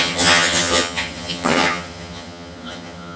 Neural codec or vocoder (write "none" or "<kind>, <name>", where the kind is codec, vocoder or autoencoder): vocoder, HiFi-GAN